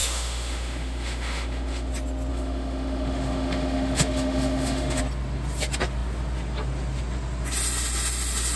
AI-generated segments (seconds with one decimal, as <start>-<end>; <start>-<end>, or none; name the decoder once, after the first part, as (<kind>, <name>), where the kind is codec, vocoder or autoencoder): 0.0-1.9 (autoencoder, DAC-VAE); 2.3-5.0